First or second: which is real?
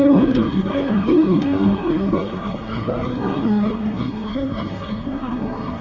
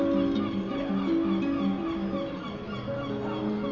second